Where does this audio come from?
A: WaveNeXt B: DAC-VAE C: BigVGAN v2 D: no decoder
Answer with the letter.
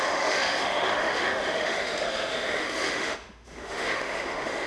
B